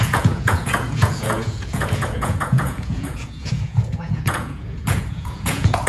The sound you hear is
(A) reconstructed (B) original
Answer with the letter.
A